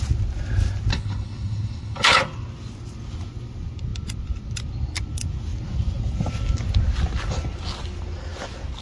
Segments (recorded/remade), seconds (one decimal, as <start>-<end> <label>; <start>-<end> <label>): 0.0-0.9 recorded; 0.9-2.2 remade; 2.2-8.8 recorded